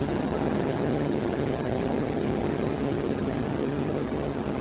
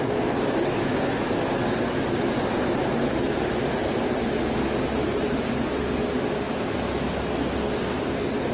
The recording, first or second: second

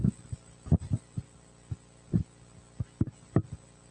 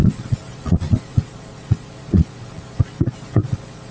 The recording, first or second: first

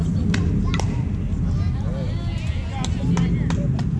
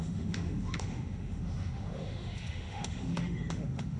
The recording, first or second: first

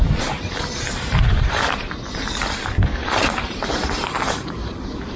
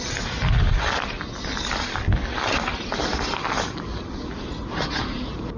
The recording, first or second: second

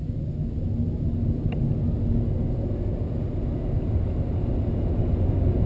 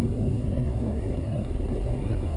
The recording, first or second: first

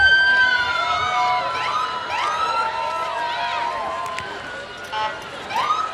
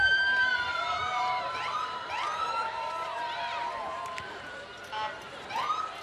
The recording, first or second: first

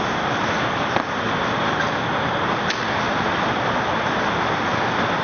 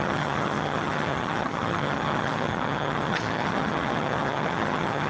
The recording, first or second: first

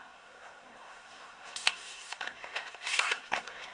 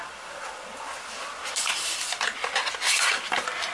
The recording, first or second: second